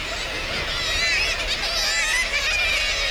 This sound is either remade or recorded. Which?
recorded